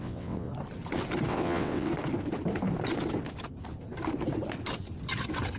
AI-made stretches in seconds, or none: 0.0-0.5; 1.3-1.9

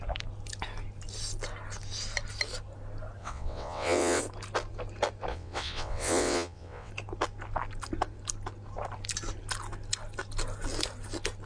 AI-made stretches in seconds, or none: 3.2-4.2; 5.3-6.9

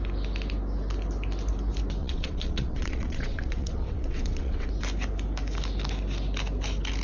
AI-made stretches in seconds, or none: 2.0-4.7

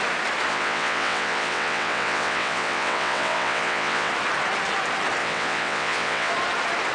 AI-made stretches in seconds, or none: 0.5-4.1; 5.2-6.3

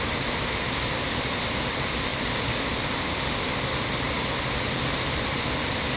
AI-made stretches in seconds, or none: none

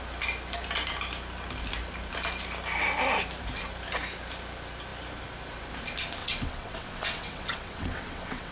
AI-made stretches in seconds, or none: 6.2-8.5

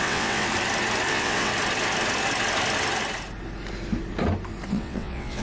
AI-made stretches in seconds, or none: 0.0-0.5; 1.1-1.5; 4.7-5.4